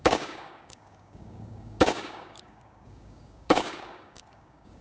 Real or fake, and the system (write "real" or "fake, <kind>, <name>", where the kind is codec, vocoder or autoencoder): fake, codec, DAC